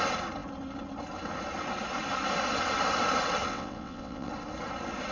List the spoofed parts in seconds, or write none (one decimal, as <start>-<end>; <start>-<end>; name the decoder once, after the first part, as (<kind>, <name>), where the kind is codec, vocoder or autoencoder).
3.5-4.3 (vocoder, WaveNeXt)